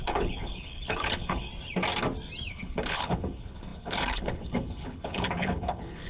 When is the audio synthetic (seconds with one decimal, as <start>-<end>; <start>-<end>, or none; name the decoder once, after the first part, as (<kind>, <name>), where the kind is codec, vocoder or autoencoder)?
0.0-1.5 (codec, HILCodec); 2.5-6.1